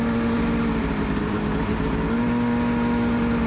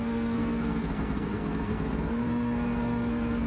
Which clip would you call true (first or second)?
first